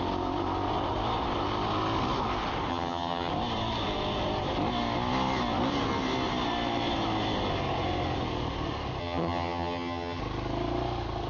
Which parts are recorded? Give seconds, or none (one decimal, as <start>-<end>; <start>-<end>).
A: 0.0-2.7; 3.3-9.0; 10.2-11.3